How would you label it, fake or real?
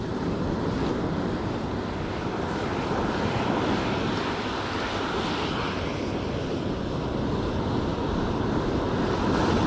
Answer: real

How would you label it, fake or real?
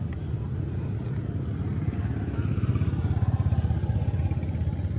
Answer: real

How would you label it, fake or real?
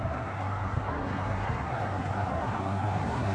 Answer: fake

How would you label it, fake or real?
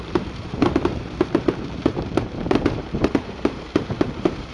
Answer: fake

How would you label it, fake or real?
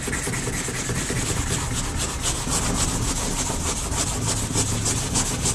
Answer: real